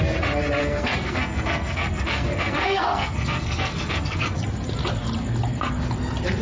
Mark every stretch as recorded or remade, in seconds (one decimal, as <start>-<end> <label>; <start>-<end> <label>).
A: 0.0-0.6 recorded; 0.6-4.4 remade; 4.4-6.4 recorded